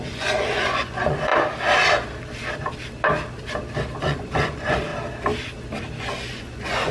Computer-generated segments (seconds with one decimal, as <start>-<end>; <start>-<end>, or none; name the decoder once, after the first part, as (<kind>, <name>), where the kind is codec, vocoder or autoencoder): 0.0-1.3 (vocoder, Vocos); 4.0-4.9; 6.0-6.9